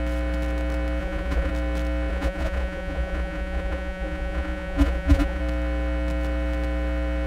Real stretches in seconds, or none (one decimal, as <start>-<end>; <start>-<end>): 0.0-1.0; 1.5-2.1; 5.4-7.3